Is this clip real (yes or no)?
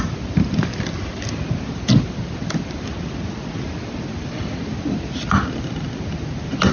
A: yes